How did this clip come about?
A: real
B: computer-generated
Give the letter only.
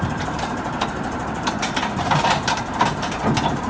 B